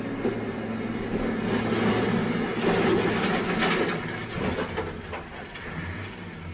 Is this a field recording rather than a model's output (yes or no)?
yes